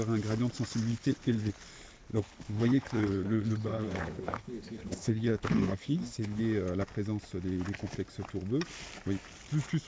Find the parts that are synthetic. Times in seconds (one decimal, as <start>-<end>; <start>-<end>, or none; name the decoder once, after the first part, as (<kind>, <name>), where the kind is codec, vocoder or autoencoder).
0.9-1.5 (codec, HILCodec); 2.1-6.4